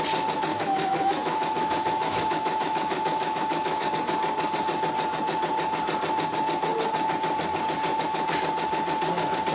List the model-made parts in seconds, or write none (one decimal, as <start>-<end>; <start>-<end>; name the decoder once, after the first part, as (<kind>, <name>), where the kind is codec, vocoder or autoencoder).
0.5-3.9 (autoencoder, DAC-VAE)